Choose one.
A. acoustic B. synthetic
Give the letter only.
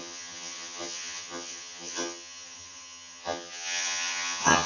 B